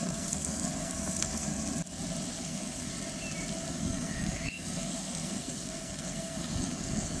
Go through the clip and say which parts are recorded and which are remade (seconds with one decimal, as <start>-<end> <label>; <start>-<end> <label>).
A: 0.0-1.5 remade; 1.5-2.3 recorded; 2.3-2.9 remade; 2.9-3.7 recorded; 3.7-7.2 remade